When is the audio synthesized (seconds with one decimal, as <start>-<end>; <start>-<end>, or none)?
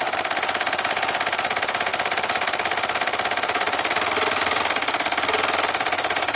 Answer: none